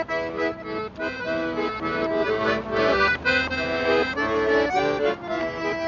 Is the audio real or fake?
real